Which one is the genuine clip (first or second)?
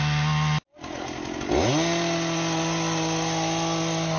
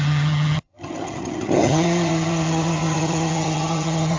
first